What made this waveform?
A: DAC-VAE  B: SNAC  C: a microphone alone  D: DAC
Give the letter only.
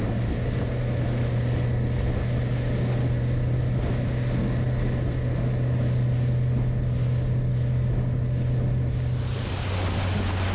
C